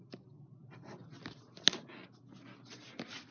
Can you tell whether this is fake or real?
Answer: real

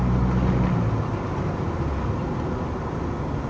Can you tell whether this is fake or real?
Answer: real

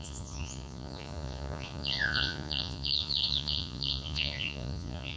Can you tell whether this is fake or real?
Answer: fake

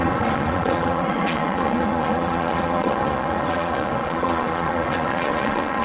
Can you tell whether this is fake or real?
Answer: fake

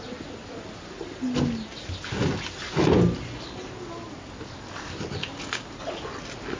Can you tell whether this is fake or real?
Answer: real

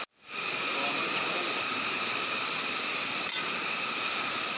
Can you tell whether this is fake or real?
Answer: real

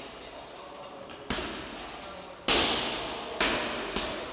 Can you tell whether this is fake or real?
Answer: real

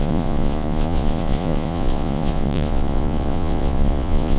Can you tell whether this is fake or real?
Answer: fake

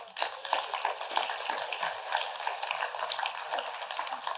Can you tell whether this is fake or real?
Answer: real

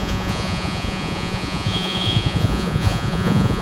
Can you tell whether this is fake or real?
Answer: fake